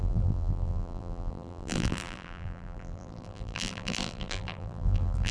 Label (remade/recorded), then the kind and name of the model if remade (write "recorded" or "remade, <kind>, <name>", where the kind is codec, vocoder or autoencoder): remade, vocoder, BigVGAN v2